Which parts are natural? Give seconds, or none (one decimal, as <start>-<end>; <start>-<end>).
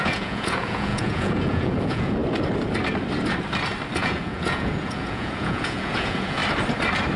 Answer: 2.2-4.0; 6.4-7.2